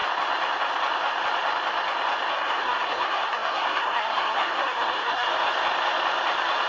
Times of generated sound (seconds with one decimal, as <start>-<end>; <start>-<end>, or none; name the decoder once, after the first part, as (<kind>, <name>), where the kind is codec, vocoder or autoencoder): 2.3-5.3 (codec, SNAC)